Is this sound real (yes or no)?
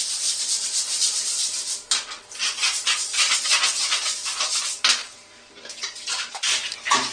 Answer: yes